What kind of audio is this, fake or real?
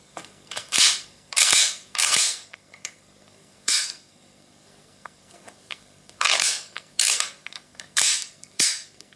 fake